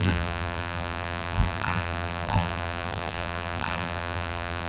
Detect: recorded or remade remade